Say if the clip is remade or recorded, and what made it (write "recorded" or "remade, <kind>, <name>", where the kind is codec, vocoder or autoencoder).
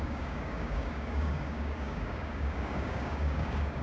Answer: remade, codec, DAC